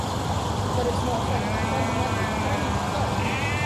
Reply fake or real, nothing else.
real